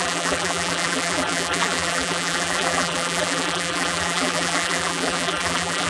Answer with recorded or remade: remade